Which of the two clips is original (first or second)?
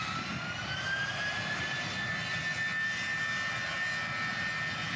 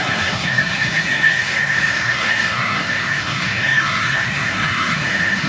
first